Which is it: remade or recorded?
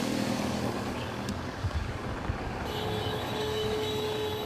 remade